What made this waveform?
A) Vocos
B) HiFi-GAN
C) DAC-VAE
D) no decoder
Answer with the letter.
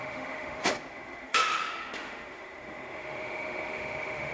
C